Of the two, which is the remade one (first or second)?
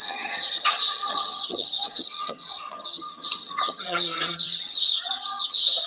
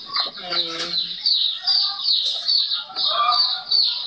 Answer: first